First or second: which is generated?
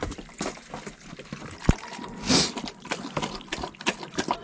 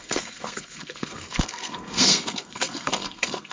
second